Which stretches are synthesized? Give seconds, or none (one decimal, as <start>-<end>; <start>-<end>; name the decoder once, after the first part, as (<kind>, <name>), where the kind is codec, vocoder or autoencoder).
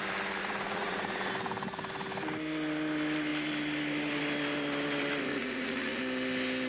0.4-1.3 (vocoder, Vocos); 5.3-6.0